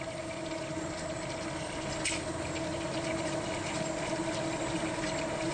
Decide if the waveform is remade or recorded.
recorded